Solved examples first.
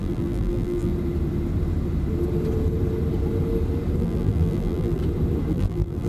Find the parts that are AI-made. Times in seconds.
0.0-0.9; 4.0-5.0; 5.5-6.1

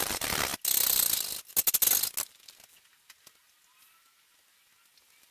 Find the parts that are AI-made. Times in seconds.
none

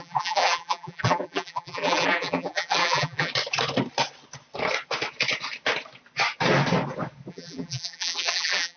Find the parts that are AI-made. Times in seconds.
0.0-3.3; 7.3-8.8

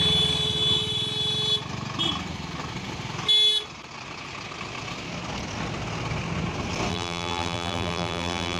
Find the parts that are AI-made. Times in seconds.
6.9-8.6

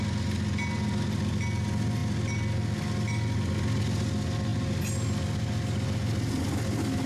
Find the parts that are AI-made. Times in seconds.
none

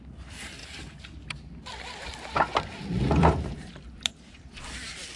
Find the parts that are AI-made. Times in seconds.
0.0-5.2

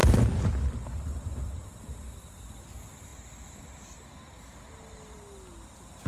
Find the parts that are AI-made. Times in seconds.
0.7-3.1; 3.6-6.1

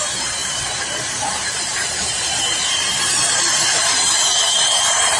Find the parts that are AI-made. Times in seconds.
0.0-5.2